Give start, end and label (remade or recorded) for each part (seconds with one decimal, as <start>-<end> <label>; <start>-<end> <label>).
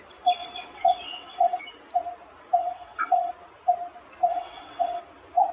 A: 0.0-0.4 recorded; 0.4-1.6 remade; 1.6-2.6 recorded; 2.6-3.3 remade; 3.3-4.3 recorded; 4.3-5.0 remade; 5.0-5.5 recorded